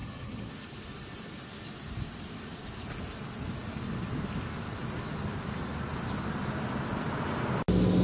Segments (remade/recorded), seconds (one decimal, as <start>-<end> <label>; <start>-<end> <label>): 0.0-0.5 remade; 0.5-8.0 recorded